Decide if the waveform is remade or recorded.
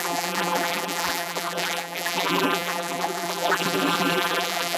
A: remade